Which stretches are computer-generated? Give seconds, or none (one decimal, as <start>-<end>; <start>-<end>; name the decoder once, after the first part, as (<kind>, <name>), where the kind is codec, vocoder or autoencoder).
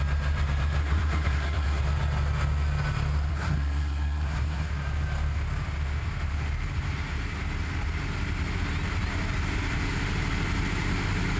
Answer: 0.8-1.8 (codec, SNAC); 3.3-4.7